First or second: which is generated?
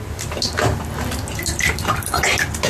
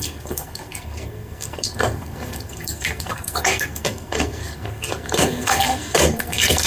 second